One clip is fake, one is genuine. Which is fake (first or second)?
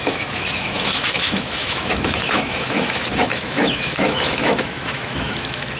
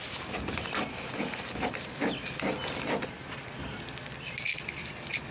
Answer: first